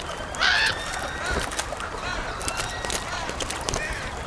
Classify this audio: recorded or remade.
recorded